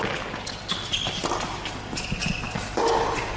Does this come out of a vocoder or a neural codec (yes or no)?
no